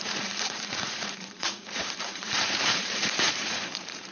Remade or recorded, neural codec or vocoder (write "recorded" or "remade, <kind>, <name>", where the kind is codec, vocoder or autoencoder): remade, vocoder, Vocos